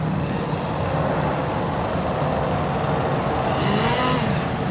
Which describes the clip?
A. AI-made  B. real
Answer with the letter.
B